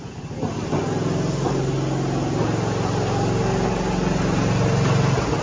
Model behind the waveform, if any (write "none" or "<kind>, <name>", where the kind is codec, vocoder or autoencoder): none